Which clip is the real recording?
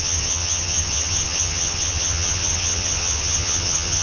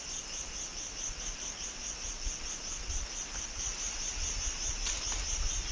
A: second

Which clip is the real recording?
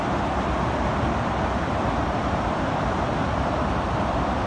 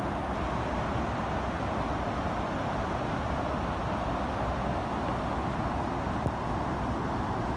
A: second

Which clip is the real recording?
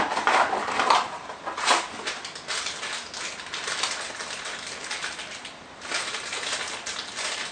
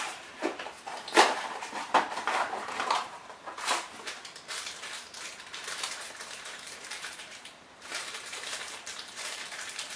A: first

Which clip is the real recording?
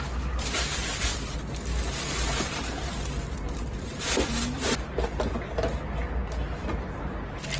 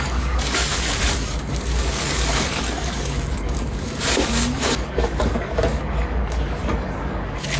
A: first